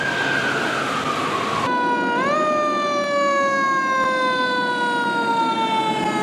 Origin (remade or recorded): recorded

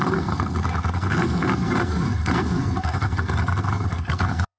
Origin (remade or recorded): remade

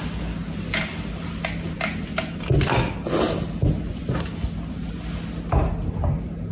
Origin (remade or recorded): recorded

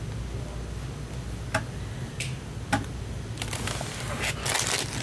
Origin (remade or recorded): recorded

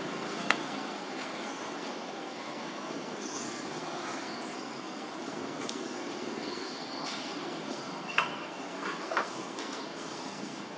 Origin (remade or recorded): remade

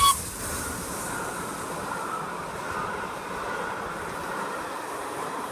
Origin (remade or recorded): recorded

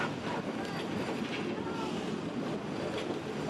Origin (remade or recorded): recorded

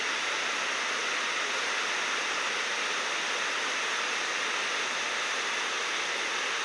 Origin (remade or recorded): recorded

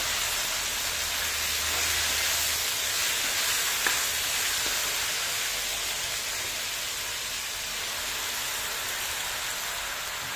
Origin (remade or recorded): recorded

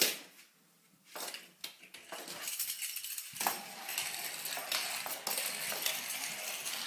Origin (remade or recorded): recorded